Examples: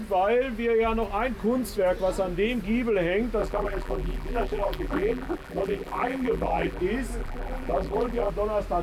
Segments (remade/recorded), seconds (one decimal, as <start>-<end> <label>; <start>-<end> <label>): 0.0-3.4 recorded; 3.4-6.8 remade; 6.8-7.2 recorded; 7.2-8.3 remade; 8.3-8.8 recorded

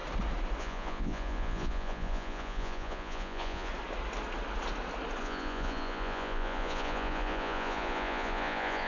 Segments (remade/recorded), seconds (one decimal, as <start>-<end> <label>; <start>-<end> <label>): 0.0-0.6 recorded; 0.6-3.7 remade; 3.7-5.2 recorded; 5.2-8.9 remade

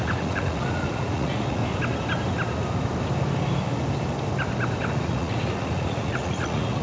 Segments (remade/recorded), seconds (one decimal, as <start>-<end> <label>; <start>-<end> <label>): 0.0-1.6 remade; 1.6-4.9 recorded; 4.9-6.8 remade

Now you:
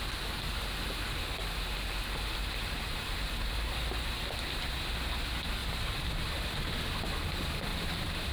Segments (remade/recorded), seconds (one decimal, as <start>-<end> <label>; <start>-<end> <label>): 0.0-2.4 recorded; 2.4-3.5 remade; 3.5-5.6 recorded; 5.6-6.8 remade; 6.8-7.7 recorded; 7.7-8.3 remade

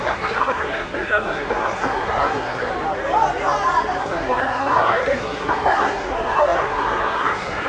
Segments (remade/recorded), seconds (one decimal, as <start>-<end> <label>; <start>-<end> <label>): 0.0-2.7 remade; 2.7-4.0 recorded; 4.0-7.7 remade